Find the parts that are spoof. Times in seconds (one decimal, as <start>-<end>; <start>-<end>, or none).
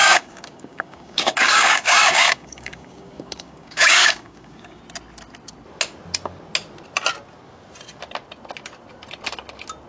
0.0-4.8